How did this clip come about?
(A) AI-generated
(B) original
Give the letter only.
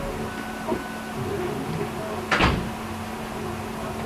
B